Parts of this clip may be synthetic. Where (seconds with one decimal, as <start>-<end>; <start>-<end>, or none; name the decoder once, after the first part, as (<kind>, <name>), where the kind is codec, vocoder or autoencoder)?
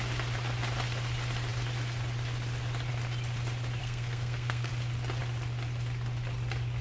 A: 3.8-4.7 (codec, SNAC)